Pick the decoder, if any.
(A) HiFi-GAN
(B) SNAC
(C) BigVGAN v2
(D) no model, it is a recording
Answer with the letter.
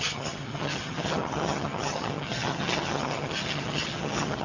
A